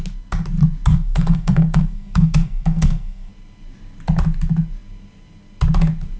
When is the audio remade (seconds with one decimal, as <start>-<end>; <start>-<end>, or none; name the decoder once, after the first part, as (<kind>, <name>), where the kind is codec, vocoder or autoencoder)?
0.9-3.3 (codec, SNAC)

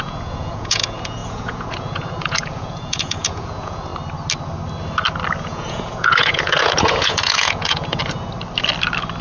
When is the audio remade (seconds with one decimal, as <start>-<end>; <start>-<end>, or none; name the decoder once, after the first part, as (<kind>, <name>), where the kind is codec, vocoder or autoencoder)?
0.0-3.9 (vocoder, Vocos); 5.4-8.0

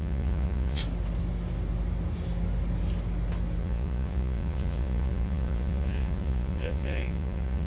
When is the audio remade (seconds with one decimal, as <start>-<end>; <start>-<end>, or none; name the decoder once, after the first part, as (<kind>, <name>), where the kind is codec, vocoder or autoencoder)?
0.0-0.8 (vocoder, Vocos); 3.6-7.7

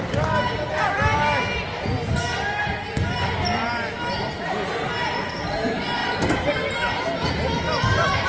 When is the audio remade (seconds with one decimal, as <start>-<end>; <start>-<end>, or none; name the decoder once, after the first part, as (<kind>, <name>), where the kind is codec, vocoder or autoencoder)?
none

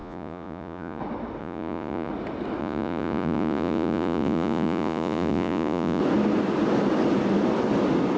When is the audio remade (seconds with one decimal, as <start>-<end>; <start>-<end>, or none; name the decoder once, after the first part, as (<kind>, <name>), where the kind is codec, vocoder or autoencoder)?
0.0-1.0 (vocoder, Vocos); 1.4-2.1; 2.6-6.0

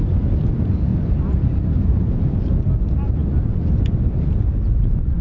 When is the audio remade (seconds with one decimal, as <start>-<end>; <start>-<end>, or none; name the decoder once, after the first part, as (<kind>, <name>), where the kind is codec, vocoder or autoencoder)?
0.9-1.8 (vocoder, BigVGAN v2); 3.2-4.2

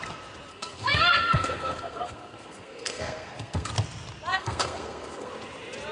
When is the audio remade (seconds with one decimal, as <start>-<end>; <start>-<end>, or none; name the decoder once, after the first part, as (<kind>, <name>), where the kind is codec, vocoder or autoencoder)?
0.5-3.7 (codec, SNAC); 4.3-5.3